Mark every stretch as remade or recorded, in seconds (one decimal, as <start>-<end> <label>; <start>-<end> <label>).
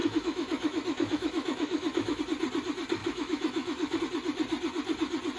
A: 0.0-2.2 remade; 2.2-3.0 recorded; 3.0-4.0 remade; 4.0-5.4 recorded